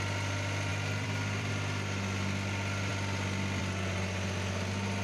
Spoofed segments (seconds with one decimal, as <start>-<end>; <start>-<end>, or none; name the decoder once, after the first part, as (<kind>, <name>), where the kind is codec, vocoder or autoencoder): 0.7-1.5 (vocoder, BigVGAN v2)